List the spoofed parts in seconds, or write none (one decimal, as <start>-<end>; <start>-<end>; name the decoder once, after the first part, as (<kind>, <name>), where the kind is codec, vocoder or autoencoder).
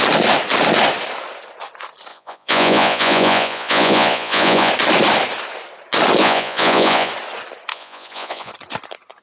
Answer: 2.1-4.7 (vocoder, Vocos); 6.2-7.1; 7.7-8.5